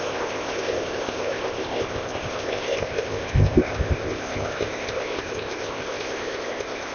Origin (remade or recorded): remade